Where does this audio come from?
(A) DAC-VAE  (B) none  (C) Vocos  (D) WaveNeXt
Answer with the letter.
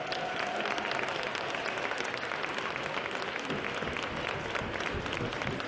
B